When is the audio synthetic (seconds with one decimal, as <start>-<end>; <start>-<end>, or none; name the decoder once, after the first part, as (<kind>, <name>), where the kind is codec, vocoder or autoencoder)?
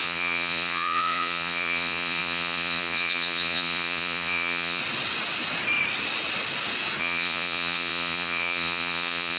0.0-4.8 (vocoder, Vocos); 7.0-9.4